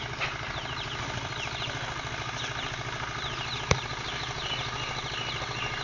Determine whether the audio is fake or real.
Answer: real